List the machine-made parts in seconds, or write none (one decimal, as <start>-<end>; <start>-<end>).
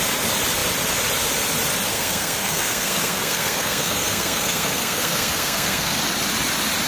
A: 1.9-6.0